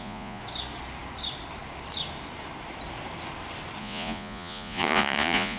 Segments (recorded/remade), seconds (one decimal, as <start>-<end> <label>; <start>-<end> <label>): 0.0-0.4 remade; 0.4-3.8 recorded; 3.8-5.6 remade